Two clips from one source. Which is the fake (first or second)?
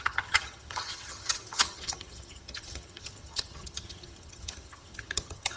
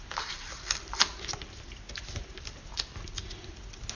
first